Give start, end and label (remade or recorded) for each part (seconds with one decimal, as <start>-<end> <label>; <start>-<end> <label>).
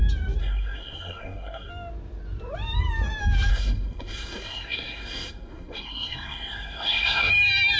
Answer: 0.0-0.4 recorded; 0.4-1.7 remade; 1.7-3.5 recorded; 3.5-7.3 remade; 7.3-7.8 recorded